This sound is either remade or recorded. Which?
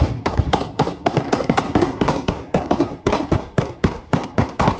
remade